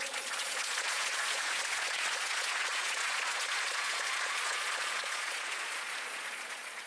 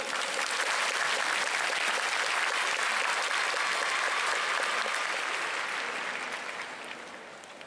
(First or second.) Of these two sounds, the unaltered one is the second